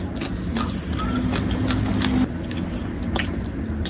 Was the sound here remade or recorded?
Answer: recorded